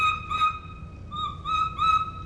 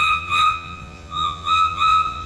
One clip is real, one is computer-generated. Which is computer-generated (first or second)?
second